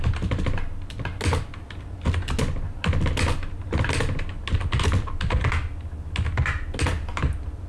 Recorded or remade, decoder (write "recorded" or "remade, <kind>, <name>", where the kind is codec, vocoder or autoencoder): recorded